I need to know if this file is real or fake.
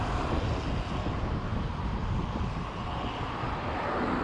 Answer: real